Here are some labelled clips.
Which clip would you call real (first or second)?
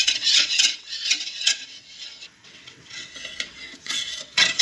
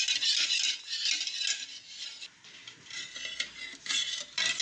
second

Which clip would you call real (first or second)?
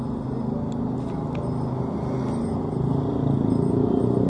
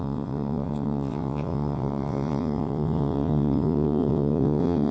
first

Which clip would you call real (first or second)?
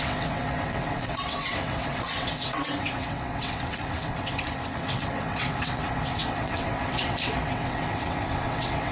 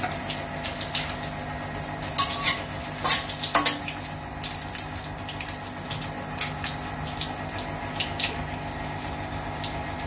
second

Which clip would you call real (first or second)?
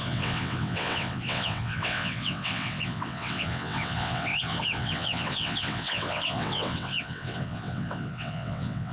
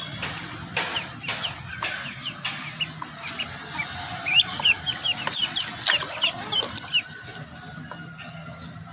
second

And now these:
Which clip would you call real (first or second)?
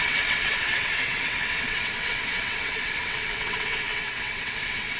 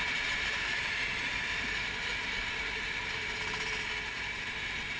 second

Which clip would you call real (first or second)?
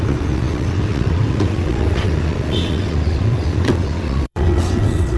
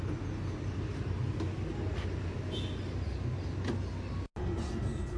second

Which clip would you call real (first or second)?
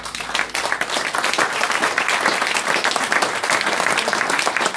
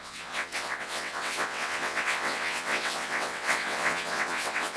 first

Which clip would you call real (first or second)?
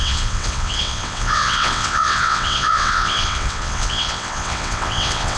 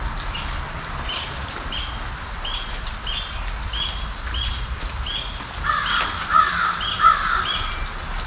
second